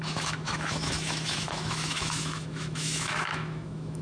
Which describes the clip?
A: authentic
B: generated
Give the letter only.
B